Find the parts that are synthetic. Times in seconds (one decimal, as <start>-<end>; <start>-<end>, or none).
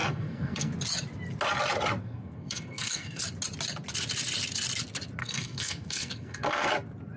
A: 0.0-0.7; 2.0-3.2; 5.2-6.7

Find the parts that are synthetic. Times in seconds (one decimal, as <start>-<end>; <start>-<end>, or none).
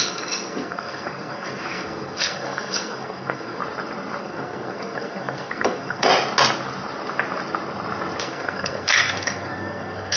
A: 0.0-3.6; 4.2-6.1; 8.2-10.2